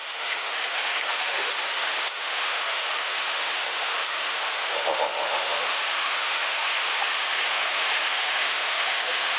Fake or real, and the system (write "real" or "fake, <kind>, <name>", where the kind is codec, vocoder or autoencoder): fake, autoencoder, DAC-VAE